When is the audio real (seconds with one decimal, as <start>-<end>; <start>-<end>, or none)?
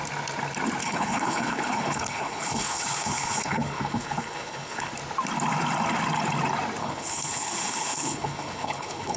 0.0-0.8; 4.9-6.8